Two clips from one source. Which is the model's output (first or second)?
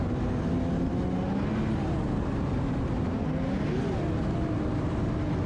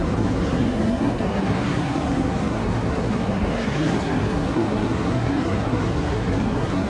second